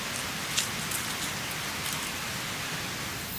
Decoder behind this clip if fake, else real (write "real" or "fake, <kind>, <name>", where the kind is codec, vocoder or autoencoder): real